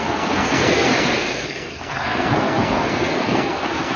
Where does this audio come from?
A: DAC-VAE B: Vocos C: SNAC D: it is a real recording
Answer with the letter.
C